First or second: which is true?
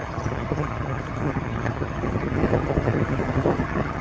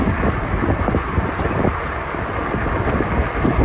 second